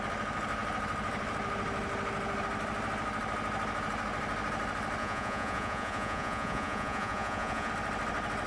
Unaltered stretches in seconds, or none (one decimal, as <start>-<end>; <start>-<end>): 0.0-5.0; 7.7-8.5

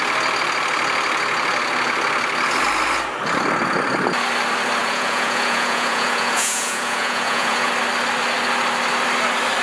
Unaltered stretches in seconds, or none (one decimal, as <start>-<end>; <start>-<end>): 0.0-4.8; 7.7-9.6

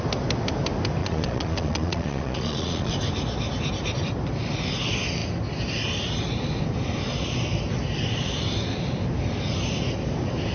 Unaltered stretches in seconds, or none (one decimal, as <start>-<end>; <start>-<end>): 0.0-1.0; 2.9-10.5

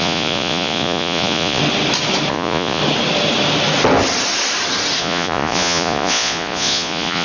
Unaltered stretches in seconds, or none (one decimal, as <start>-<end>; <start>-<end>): 1.6-2.3; 2.8-5.0

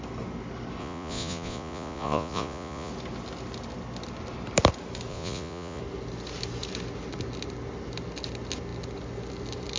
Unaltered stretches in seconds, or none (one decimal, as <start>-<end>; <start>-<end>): 0.0-0.8; 2.9-5.1; 5.8-9.8

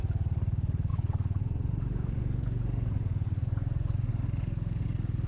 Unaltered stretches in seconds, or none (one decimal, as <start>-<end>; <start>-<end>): 0.0-0.9; 4.1-5.3

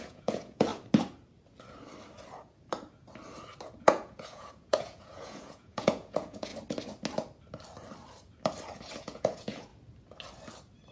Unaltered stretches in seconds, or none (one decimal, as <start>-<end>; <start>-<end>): 0.7-3.8; 6.5-9.0; 9.7-10.9

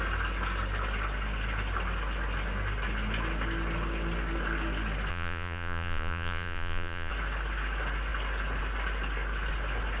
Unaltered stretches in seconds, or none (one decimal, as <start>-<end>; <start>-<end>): 0.0-5.1; 7.1-10.0